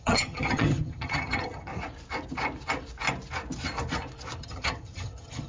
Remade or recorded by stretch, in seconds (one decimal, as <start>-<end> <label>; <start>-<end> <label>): 0.0-1.7 remade; 1.7-4.4 recorded; 4.4-5.5 remade